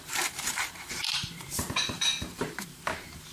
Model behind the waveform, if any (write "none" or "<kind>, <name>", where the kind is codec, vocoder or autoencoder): vocoder, BigVGAN v2